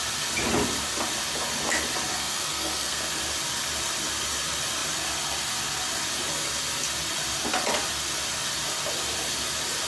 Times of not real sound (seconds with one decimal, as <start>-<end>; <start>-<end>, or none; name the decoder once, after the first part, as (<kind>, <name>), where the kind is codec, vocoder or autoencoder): 2.1-3.1 (codec, SNAC)